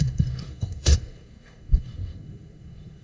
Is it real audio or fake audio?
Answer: fake